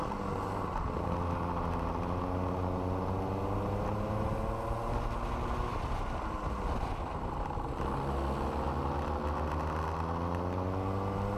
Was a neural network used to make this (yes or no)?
no